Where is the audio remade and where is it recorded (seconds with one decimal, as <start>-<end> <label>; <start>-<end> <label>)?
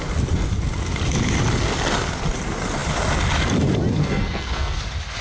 0.0-4.0 recorded; 4.0-4.8 remade; 4.8-5.2 recorded